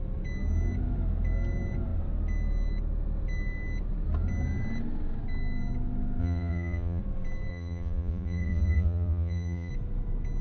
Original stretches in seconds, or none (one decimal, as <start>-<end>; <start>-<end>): 0.0-6.2; 7.0-7.5; 9.7-10.4